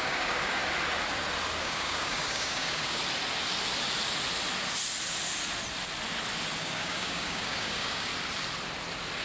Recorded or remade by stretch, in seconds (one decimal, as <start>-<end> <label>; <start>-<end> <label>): 0.0-0.6 remade; 0.6-1.6 recorded; 1.6-3.0 remade; 3.0-6.6 recorded; 6.6-8.1 remade; 8.1-9.2 recorded